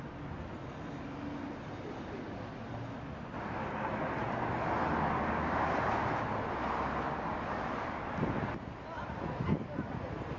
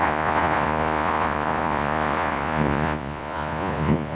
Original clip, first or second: first